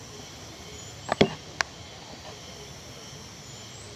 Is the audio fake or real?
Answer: real